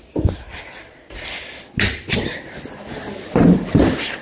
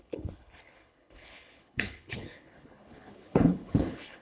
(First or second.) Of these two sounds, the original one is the first